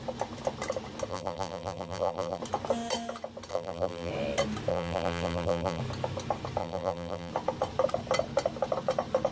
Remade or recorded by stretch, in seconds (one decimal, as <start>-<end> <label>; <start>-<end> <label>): 0.0-1.1 recorded; 1.1-2.4 remade; 2.4-3.5 recorded; 3.5-4.1 remade; 4.1-4.7 recorded; 4.7-5.8 remade; 5.8-6.6 recorded; 6.6-7.3 remade; 7.3-9.3 recorded